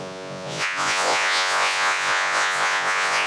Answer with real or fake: fake